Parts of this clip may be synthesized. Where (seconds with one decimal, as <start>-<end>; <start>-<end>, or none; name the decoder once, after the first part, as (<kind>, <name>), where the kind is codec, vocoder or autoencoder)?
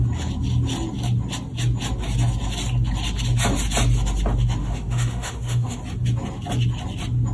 4.6-5.8 (autoencoder, DAC-VAE)